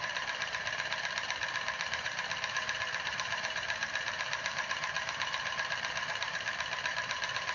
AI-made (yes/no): yes